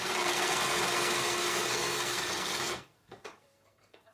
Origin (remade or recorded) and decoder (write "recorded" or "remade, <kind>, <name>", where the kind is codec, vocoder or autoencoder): remade, codec, SNAC